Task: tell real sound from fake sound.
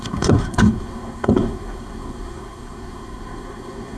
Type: fake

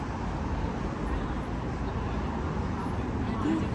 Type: real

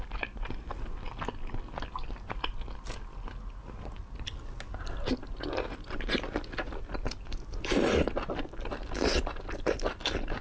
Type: real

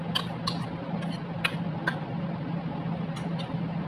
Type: real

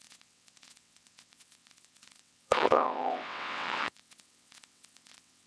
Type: fake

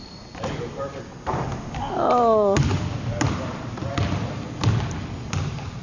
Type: real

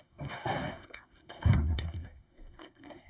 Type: fake